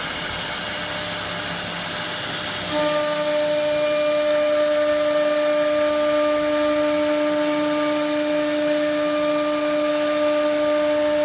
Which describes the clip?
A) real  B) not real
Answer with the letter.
A